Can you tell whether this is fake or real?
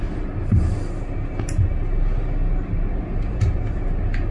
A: real